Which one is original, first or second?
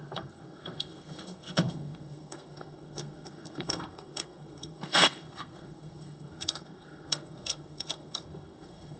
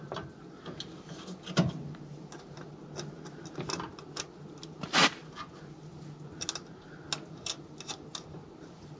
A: second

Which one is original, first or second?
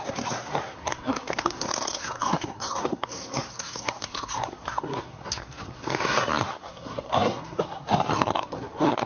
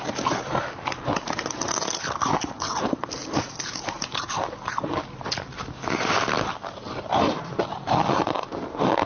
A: second